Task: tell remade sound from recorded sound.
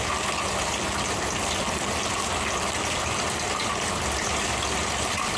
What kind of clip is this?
recorded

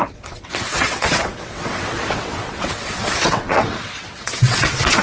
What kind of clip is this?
remade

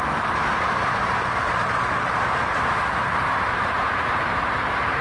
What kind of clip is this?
remade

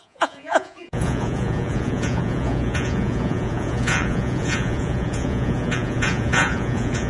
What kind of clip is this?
remade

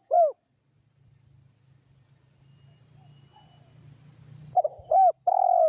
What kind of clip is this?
recorded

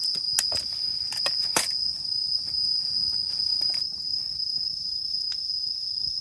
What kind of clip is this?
recorded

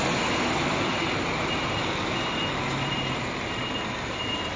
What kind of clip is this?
remade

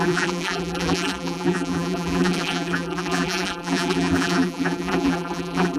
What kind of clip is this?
remade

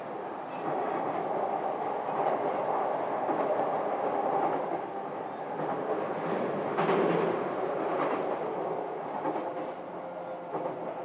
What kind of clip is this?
recorded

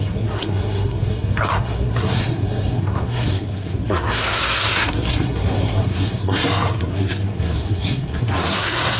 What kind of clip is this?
remade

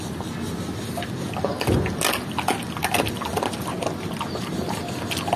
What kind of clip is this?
recorded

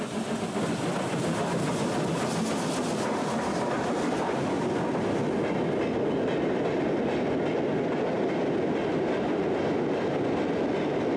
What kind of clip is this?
recorded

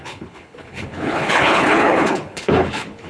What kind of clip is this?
remade